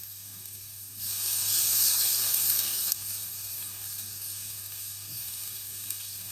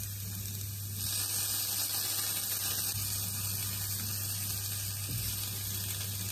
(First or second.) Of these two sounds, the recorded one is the second